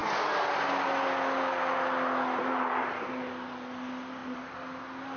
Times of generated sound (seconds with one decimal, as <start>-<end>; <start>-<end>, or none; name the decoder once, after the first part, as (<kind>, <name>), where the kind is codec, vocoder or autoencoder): none

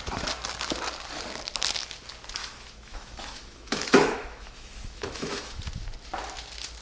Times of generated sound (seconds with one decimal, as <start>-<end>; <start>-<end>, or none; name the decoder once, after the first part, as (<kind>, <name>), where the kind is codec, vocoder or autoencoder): 2.4-5.6 (autoencoder, DAC-VAE)

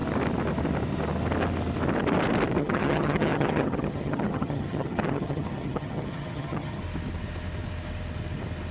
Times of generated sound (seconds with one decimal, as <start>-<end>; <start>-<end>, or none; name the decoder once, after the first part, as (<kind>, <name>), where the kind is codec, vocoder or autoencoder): 2.6-6.8 (vocoder, HiFi-GAN)

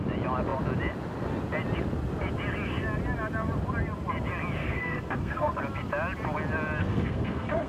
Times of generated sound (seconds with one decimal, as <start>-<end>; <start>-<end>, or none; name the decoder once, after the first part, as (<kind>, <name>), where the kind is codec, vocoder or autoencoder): 4.6-5.6 (codec, SNAC); 6.8-7.7

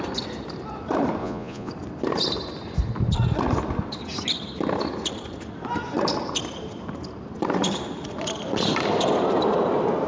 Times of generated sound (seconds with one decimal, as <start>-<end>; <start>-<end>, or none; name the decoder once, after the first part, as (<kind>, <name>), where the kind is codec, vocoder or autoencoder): 1.2-1.7 (vocoder, Vocos)